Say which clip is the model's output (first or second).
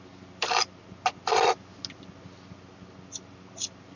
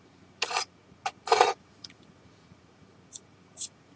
second